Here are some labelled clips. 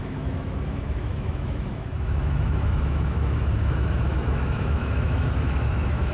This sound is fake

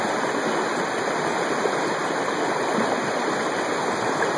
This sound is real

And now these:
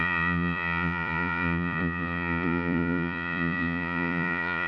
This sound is fake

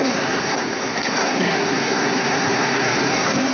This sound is fake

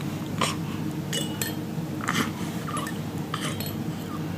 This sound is real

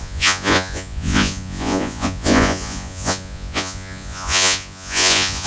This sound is fake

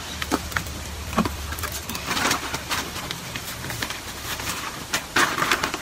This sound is fake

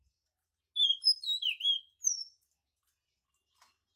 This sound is real